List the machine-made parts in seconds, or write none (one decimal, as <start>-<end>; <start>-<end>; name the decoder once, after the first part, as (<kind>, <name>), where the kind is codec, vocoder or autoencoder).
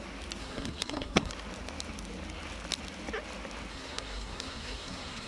0.4-1.3 (codec, SNAC); 3.7-5.3